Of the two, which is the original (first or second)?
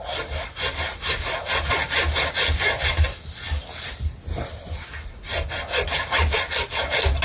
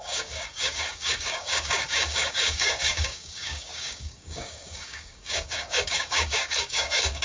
first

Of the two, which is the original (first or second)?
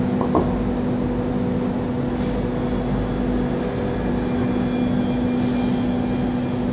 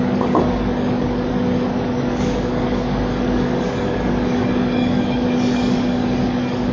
first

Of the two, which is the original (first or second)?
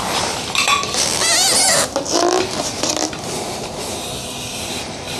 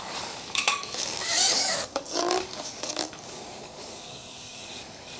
first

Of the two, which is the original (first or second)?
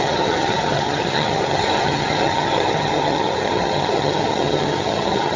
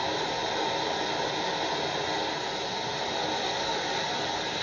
second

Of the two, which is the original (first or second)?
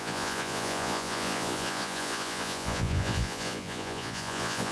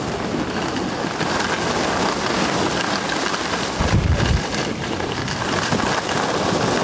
second